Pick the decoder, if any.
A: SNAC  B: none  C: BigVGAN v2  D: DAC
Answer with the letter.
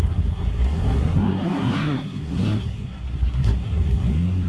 A